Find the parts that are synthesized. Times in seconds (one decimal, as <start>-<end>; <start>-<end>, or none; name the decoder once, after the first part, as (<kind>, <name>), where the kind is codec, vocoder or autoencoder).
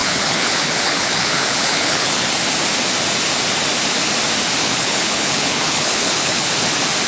0.0-2.3 (codec, HILCodec); 4.6-6.5